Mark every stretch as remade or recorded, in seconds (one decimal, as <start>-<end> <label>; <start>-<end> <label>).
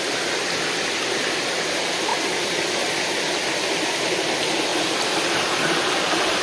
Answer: 0.0-6.4 recorded